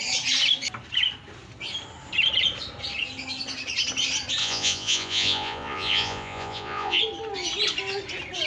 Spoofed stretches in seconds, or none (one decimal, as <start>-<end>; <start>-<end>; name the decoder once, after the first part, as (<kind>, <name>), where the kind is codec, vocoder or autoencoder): 4.4-7.0 (vocoder, Vocos)